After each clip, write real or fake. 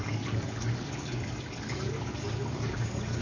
fake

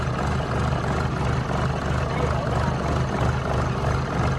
real